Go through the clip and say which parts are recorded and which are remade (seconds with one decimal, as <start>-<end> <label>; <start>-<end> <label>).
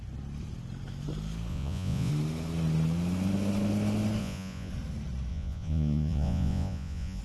0.0-1.5 recorded; 1.5-2.1 remade; 2.1-4.2 recorded; 4.2-4.7 remade; 4.7-5.3 recorded; 5.3-7.2 remade